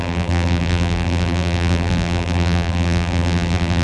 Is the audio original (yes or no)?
no